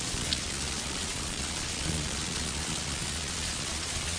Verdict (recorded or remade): remade